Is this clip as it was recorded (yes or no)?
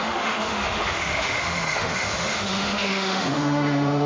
no